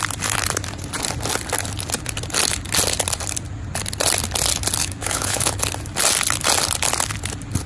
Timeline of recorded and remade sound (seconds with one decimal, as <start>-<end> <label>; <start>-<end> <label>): 0.0-4.8 recorded; 4.8-5.6 remade; 5.6-7.7 recorded